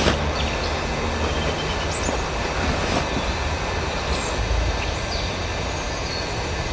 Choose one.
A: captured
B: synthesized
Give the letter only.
A